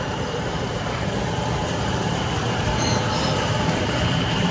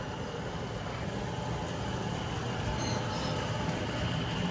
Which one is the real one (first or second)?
second